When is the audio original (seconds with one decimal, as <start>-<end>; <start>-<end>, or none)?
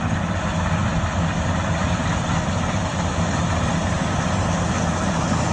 0.0-5.5